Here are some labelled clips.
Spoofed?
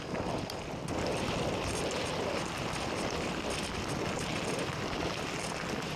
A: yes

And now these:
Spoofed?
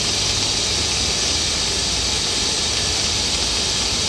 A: no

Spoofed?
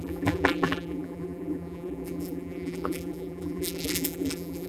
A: yes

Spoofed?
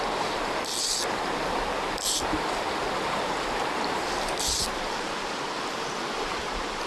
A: yes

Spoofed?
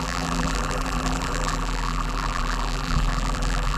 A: yes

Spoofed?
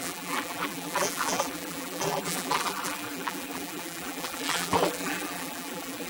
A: yes